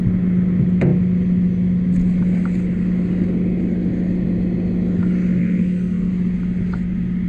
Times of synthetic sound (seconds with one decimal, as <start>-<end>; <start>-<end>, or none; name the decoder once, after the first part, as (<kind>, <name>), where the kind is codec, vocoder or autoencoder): 5.4-6.1 (codec, SNAC)